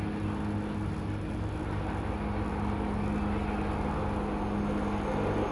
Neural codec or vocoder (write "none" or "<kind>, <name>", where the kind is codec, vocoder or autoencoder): none